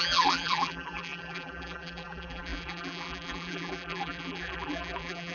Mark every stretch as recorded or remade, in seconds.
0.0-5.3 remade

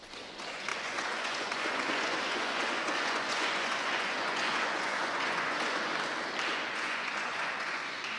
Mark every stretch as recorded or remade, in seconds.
0.0-5.9 remade; 5.9-6.5 recorded; 6.5-8.2 remade

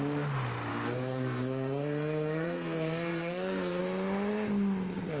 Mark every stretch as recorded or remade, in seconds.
0.0-0.7 recorded; 0.7-3.8 remade; 3.8-5.2 recorded

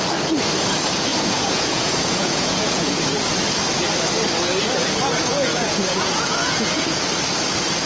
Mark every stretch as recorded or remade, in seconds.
0.0-1.1 recorded; 1.1-3.0 remade; 3.0-5.3 recorded; 5.3-7.1 remade; 7.1-7.9 recorded

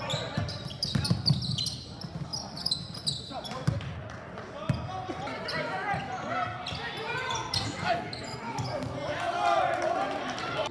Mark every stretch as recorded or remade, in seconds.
0.0-2.3 recorded; 2.3-3.0 remade; 3.0-10.7 recorded